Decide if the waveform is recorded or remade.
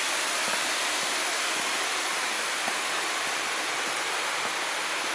recorded